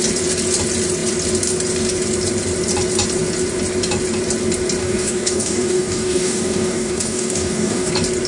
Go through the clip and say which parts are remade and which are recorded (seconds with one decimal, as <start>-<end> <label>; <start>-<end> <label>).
0.0-4.8 recorded; 4.8-7.9 remade; 7.9-8.3 recorded